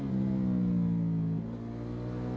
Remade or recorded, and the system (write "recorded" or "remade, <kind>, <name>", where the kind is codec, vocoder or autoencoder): recorded